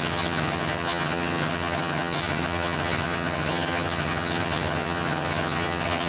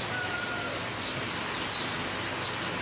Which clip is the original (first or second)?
second